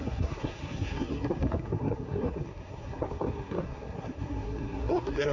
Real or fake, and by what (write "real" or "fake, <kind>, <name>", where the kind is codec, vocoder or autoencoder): fake, codec, SNAC